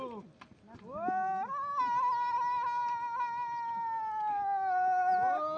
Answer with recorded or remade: recorded